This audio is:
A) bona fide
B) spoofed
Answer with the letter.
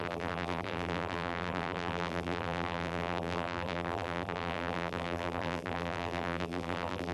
B